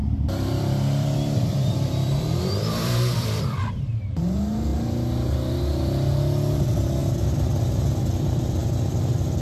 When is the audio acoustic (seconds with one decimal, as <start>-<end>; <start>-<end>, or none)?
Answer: 3.8-8.6